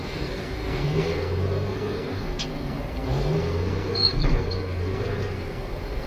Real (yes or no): no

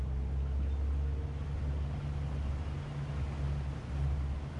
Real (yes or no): yes